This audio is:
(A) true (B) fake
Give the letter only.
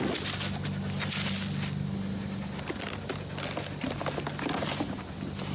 A